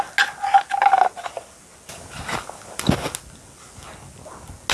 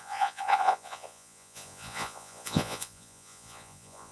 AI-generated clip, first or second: second